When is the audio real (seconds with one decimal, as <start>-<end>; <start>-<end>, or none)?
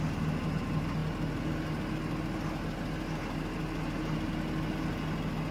0.0-5.5